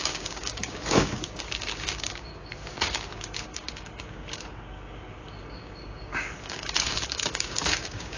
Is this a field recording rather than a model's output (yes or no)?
no